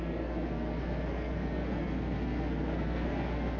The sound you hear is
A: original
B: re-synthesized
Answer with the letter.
B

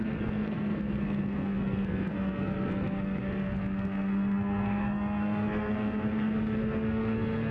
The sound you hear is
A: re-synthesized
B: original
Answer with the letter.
A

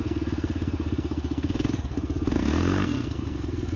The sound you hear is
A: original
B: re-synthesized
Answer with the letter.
B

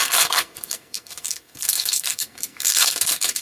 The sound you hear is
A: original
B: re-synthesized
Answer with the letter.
B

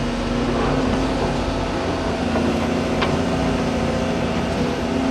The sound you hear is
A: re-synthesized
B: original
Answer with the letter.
B